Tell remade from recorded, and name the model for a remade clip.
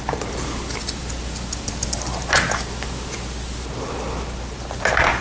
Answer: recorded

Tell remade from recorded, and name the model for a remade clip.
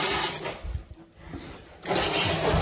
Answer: recorded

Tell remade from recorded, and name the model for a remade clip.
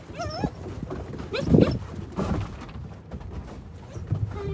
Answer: recorded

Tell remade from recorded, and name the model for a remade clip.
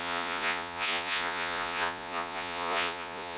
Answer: remade, vocoder, Vocos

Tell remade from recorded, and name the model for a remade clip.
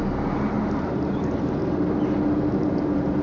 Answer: recorded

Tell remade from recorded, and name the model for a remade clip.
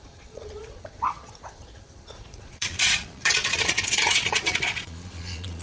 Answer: remade, vocoder, Vocos